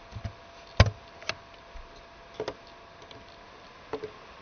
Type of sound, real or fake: real